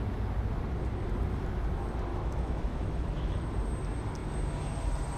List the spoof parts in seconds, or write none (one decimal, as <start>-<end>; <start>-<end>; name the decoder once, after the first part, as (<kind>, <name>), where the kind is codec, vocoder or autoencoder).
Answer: 2.1-3.5 (autoencoder, DAC-VAE)